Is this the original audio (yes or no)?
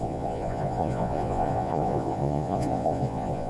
no